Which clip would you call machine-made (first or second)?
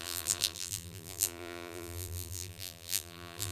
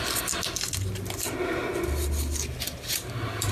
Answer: first